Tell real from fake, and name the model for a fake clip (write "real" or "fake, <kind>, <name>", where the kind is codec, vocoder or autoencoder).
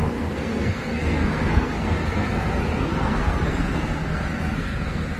fake, codec, SNAC